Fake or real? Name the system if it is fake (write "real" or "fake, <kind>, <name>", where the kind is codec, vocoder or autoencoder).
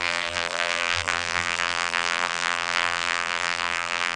fake, vocoder, BigVGAN v2